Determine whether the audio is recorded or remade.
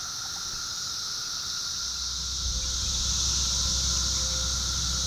recorded